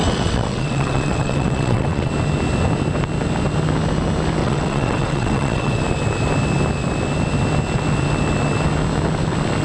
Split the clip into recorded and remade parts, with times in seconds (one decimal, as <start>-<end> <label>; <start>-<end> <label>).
0.0-2.1 remade; 2.1-4.4 recorded; 4.4-5.8 remade; 5.8-9.6 recorded